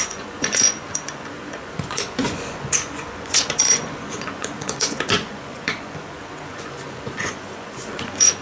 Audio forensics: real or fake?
fake